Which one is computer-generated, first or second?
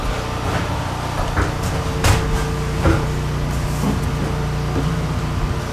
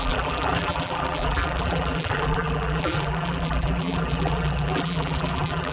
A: second